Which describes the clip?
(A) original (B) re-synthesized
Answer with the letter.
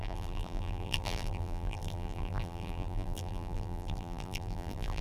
B